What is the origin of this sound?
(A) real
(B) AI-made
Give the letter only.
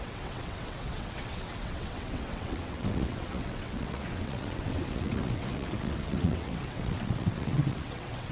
B